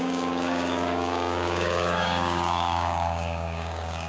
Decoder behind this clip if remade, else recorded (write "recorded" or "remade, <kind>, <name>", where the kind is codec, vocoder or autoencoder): remade, codec, DAC